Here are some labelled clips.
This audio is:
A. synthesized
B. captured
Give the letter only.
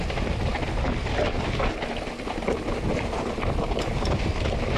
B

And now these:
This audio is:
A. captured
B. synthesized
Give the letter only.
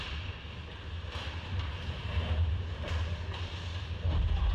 A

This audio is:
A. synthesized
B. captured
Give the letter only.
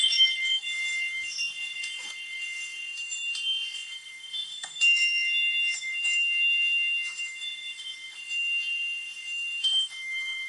A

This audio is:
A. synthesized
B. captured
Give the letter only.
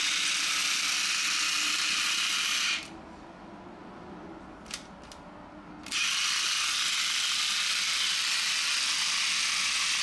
B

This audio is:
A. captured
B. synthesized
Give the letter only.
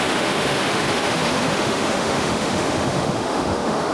B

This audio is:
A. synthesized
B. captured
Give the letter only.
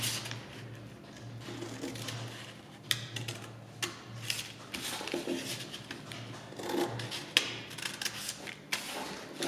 B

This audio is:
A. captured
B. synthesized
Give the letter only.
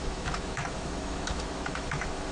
B